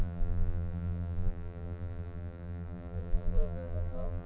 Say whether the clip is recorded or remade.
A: remade